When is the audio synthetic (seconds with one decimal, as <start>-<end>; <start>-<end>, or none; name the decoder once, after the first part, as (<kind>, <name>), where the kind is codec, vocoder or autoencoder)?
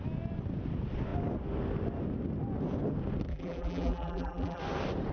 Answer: 3.3-4.6 (vocoder, BigVGAN v2)